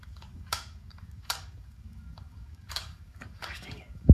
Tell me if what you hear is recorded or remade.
remade